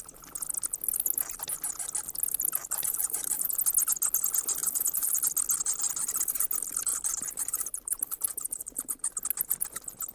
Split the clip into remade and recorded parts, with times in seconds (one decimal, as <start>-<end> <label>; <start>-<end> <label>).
0.0-2.6 recorded; 2.6-3.6 remade; 3.6-4.6 recorded; 4.6-5.2 remade; 5.2-6.9 recorded; 6.9-9.2 remade; 9.2-10.1 recorded